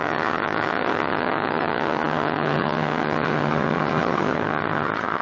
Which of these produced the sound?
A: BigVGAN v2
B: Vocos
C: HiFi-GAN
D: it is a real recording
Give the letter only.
C